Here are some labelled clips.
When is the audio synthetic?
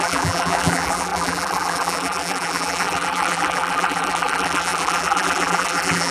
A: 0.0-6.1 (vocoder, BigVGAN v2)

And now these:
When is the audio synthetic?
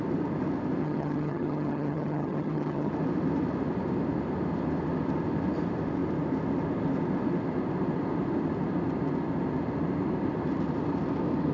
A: 0.8-2.9 (vocoder, HiFi-GAN)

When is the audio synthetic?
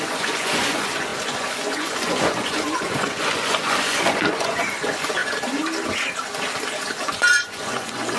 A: 0.0-5.2 (vocoder, Vocos); 7.0-8.2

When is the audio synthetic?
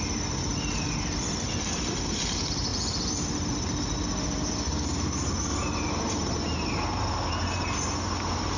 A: none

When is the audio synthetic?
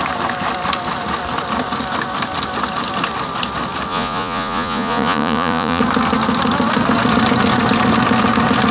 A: 3.9-5.8 (vocoder, Vocos)